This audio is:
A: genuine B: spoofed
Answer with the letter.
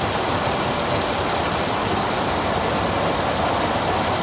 A